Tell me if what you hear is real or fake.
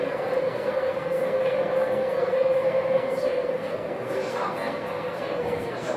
fake